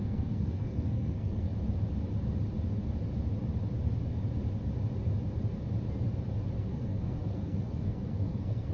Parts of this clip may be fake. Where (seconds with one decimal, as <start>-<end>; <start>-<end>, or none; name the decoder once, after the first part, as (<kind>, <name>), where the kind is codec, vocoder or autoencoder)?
0.0-1.5 (codec, SNAC); 6.6-8.7